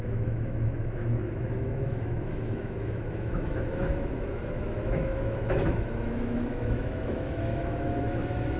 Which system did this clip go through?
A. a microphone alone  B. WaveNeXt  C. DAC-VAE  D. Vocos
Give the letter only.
C